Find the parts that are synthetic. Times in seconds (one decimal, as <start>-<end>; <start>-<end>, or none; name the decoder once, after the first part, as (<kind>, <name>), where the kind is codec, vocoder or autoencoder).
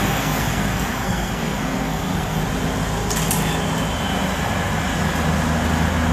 0.0-2.4 (codec, SNAC)